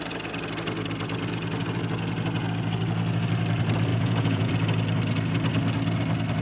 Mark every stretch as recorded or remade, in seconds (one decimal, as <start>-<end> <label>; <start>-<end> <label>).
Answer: 0.0-3.9 recorded; 3.9-4.5 remade; 4.5-6.4 recorded